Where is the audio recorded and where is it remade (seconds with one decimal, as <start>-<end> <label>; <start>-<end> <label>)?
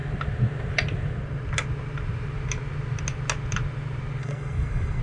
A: 0.0-4.2 recorded; 4.2-5.0 remade